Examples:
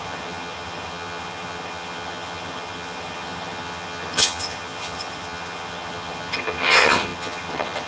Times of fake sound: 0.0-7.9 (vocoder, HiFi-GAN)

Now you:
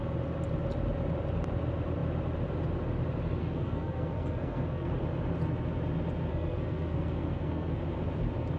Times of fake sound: 3.4-5.0 (codec, SNAC); 6.3-7.8

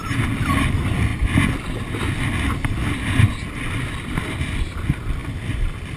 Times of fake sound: none

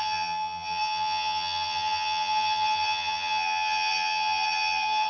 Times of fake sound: 0.0-5.1 (vocoder, HiFi-GAN)